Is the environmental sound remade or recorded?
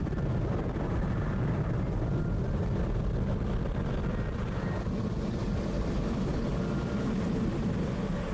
recorded